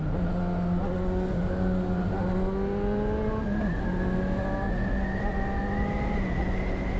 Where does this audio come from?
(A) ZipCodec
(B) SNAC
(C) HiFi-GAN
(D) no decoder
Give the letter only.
D